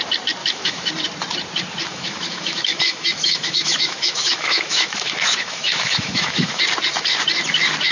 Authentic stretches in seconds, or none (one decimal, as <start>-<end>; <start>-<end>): 0.0-0.4; 0.9-1.9; 6.6-7.9